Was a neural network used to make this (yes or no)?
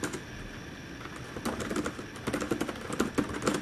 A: no